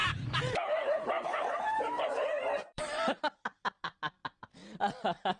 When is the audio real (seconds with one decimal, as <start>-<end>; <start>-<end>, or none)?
3.2-5.4